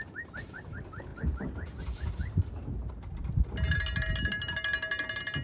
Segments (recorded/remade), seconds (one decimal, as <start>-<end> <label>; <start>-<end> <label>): 0.0-5.4 recorded